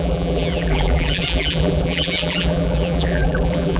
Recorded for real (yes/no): no